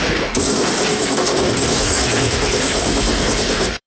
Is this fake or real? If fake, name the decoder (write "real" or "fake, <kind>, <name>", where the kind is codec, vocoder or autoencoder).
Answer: fake, codec, DAC